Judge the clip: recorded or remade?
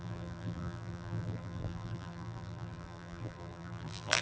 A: remade